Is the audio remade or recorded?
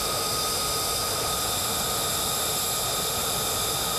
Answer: recorded